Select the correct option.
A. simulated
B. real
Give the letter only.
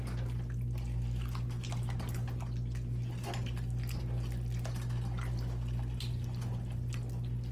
B